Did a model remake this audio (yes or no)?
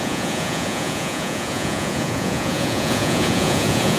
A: yes